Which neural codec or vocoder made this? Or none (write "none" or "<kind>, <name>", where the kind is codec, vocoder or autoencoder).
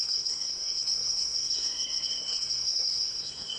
codec, SNAC